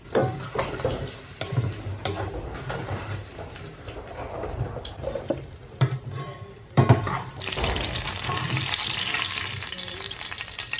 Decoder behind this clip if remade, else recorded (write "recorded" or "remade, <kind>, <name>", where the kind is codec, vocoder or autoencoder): remade, vocoder, BigVGAN v2